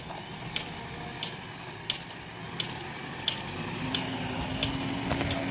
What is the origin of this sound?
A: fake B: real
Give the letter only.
B